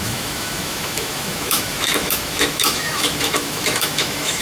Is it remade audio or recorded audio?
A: remade